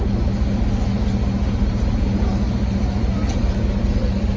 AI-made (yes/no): no